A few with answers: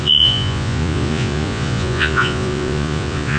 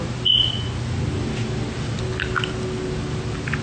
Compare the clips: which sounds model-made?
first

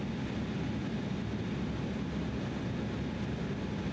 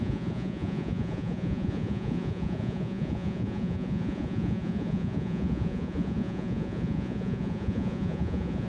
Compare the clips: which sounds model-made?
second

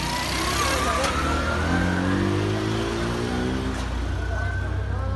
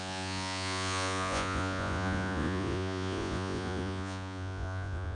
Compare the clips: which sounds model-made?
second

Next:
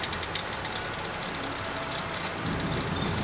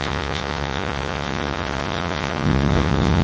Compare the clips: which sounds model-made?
second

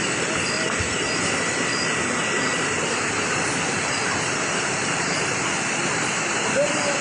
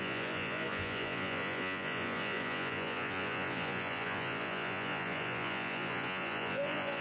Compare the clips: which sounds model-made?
second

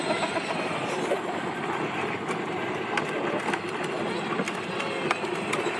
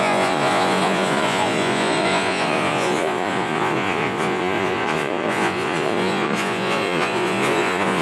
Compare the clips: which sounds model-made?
second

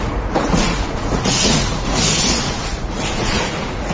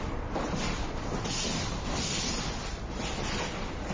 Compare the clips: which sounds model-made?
first